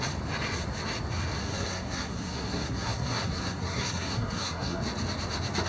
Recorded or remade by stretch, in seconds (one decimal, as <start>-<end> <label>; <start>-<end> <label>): 0.0-1.4 recorded; 1.4-4.8 remade; 4.8-5.7 recorded